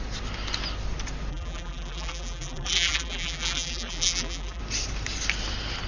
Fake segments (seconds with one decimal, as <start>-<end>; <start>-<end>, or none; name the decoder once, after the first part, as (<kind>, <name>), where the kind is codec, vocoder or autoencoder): 1.3-4.6 (vocoder, BigVGAN v2)